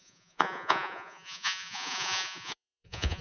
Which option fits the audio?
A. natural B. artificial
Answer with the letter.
B